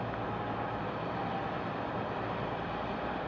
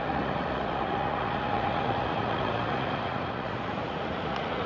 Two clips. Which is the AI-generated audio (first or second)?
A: second